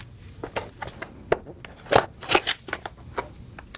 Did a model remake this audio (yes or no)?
no